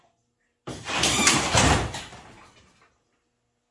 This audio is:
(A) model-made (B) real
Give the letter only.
B